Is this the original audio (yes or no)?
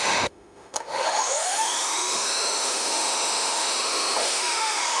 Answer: no